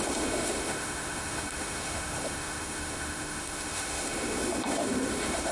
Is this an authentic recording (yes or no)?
no